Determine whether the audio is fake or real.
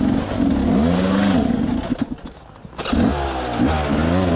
real